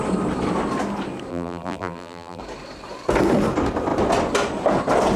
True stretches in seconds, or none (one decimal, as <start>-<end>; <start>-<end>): 0.0-1.3; 2.4-5.2